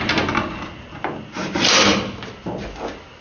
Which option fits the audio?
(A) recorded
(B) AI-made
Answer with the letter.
A